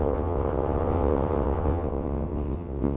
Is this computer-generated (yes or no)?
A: yes